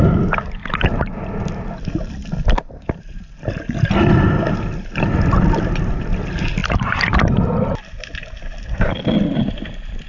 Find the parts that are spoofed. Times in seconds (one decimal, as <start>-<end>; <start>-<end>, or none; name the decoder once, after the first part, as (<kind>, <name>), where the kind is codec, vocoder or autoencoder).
none